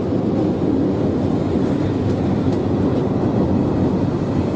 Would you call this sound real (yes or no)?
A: yes